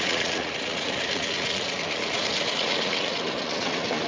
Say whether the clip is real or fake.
fake